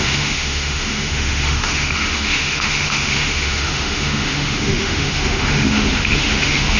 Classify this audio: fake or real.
fake